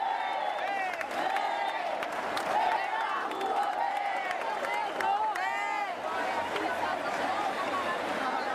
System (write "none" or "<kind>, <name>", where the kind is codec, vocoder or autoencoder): none